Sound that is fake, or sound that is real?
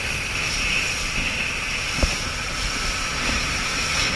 fake